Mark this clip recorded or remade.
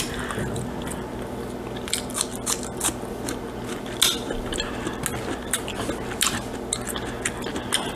recorded